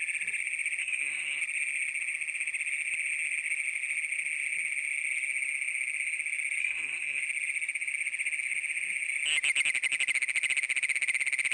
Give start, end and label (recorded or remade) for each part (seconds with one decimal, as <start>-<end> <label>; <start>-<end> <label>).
0.0-0.8 recorded; 0.8-1.4 remade; 1.4-6.6 recorded; 6.6-7.2 remade; 7.2-11.5 recorded